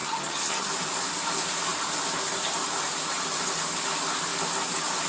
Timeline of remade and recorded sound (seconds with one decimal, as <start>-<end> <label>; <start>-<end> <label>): 0.0-0.7 remade; 0.7-5.1 recorded

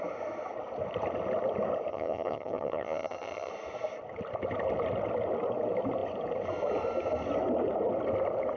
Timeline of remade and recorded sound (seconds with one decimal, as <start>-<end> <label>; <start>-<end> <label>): 0.0-1.9 recorded; 1.9-3.5 remade; 3.5-8.6 recorded